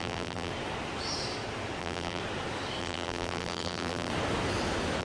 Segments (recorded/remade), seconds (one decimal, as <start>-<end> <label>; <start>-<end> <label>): 0.0-0.5 remade; 0.5-1.8 recorded; 1.8-2.2 remade; 2.2-2.8 recorded; 2.8-4.1 remade; 4.1-5.0 recorded